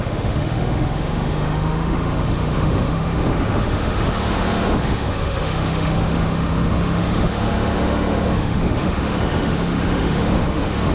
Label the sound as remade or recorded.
remade